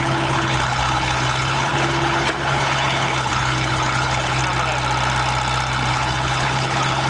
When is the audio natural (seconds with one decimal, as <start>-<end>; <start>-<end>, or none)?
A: 4.4-5.9